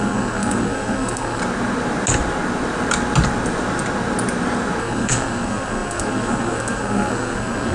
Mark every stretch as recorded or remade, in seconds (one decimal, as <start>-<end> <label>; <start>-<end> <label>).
0.0-1.4 remade; 1.4-4.8 recorded; 4.8-7.7 remade